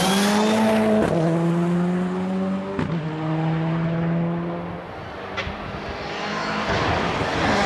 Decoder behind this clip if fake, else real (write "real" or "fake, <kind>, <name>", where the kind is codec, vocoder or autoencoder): real